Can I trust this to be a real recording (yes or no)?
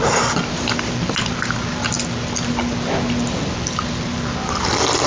yes